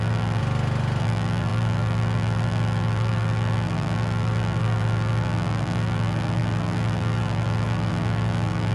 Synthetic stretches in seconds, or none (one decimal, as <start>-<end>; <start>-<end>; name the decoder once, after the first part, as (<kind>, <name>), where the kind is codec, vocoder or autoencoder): 0.0-0.4 (vocoder, BigVGAN v2); 1.0-8.7